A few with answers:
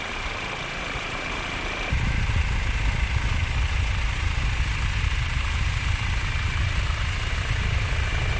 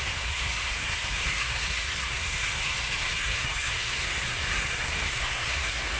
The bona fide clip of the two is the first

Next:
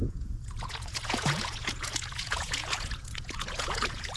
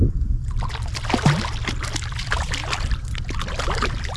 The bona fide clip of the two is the second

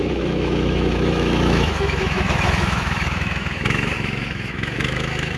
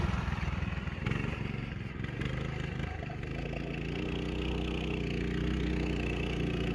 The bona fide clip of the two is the second